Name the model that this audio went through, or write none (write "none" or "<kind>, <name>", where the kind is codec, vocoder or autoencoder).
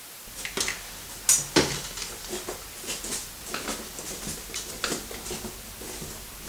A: none